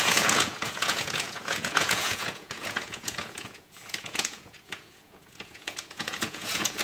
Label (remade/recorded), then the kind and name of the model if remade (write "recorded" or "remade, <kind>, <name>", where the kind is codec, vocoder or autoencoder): remade, vocoder, Vocos